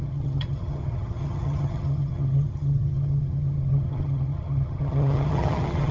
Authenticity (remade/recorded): remade